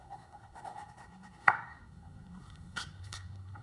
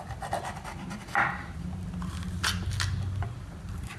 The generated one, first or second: first